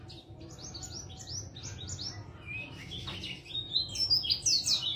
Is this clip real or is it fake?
real